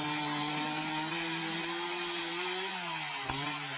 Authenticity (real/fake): real